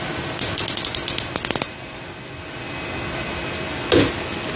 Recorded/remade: recorded